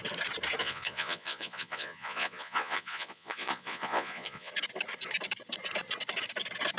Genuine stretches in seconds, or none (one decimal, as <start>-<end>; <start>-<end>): 0.0-0.6; 4.5-6.8